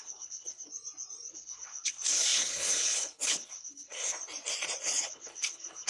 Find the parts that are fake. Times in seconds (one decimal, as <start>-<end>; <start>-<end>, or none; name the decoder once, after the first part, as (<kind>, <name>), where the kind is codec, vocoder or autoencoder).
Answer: 0.0-0.7 (codec, HILCodec); 1.3-4.0; 4.8-5.9